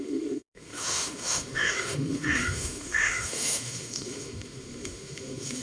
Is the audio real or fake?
fake